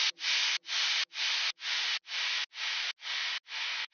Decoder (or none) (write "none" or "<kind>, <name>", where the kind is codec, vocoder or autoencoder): none